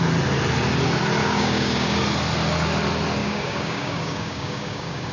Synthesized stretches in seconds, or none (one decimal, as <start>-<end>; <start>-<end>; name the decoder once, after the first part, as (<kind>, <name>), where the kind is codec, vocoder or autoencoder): 1.2-2.0 (codec, DAC); 3.2-5.1